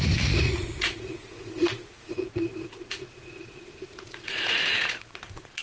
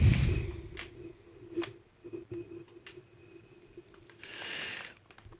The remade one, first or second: first